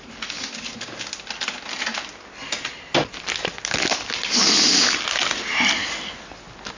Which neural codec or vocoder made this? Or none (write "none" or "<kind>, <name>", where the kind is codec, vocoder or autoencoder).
none